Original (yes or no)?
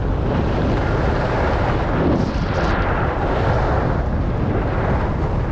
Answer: yes